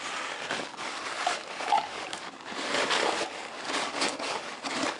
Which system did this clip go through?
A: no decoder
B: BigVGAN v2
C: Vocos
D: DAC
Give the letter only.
D